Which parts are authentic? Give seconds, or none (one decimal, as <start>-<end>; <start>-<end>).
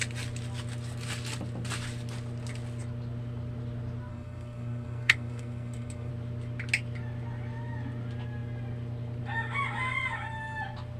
0.0-4.1; 6.1-11.0